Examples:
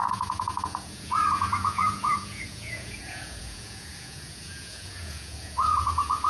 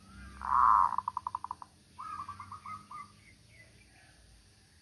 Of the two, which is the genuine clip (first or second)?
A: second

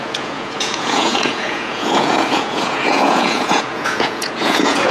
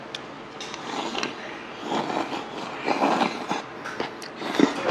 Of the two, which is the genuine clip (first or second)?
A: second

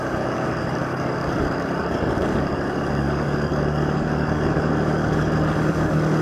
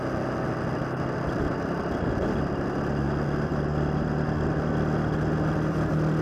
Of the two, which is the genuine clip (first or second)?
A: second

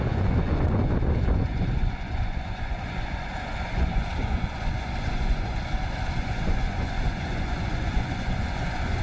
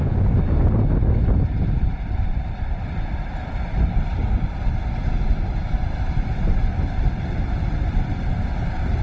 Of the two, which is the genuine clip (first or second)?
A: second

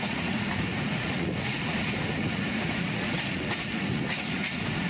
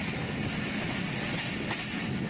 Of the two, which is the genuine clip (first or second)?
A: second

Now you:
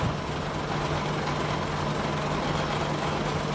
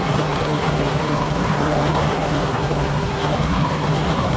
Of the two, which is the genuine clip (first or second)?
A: first